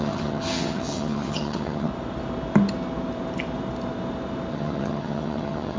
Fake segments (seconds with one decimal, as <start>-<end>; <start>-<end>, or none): 0.0-1.9; 4.5-5.8